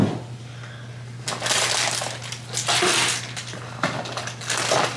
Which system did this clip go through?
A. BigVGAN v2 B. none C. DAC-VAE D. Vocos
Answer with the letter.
B